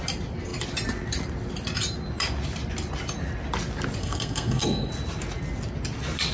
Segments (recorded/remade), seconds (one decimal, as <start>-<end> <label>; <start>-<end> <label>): 0.0-4.0 recorded; 4.0-4.9 remade; 4.9-6.3 recorded